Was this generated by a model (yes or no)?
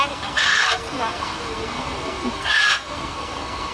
yes